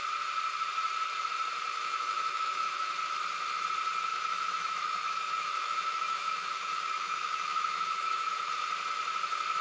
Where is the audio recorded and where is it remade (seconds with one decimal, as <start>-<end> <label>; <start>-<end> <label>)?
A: 0.0-1.7 recorded; 1.7-2.9 remade; 2.9-4.1 recorded; 4.1-8.5 remade; 8.5-9.6 recorded

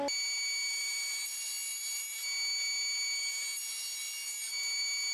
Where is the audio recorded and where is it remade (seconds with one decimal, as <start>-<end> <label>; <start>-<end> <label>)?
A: 0.0-5.1 recorded

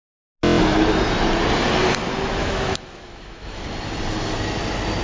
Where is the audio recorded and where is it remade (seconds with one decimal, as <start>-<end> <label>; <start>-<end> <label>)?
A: 0.0-2.4 recorded; 2.4-3.6 remade; 3.6-5.0 recorded

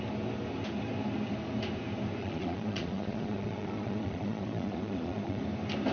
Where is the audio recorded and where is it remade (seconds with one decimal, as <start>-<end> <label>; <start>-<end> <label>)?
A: 0.0-2.2 recorded; 2.2-5.4 remade; 5.4-5.9 recorded

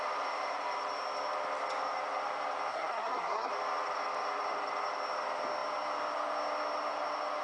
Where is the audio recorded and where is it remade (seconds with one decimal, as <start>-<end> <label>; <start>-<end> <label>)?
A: 0.0-2.7 recorded; 2.7-3.5 remade; 3.5-7.4 recorded

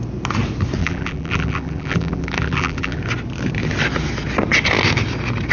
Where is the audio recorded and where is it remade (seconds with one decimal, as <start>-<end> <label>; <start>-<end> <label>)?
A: 0.0-0.8 recorded; 0.8-3.0 remade; 3.0-5.5 recorded

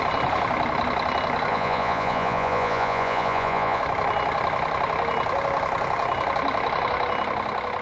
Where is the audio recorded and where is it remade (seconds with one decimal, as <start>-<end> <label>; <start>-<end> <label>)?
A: 0.0-1.5 recorded; 1.5-3.8 remade; 3.8-7.8 recorded

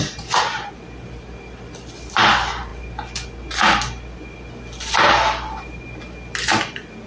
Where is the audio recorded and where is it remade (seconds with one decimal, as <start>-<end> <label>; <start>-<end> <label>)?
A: 0.0-7.1 recorded